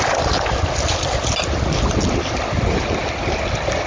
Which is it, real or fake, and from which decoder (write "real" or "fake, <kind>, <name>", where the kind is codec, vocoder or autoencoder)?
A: real